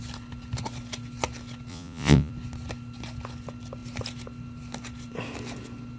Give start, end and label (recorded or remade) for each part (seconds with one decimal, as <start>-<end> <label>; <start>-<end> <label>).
0.0-1.7 recorded; 1.7-2.3 remade; 2.3-6.0 recorded